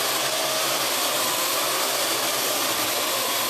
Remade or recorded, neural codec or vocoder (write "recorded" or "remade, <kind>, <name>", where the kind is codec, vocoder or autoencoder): recorded